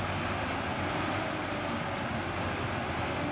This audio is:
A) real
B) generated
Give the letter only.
A